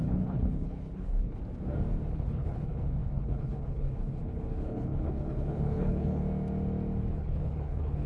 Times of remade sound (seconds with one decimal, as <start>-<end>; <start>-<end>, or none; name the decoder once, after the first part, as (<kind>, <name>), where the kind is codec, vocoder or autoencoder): 0.0-1.4 (codec, HILCodec); 2.1-6.2; 7.1-8.1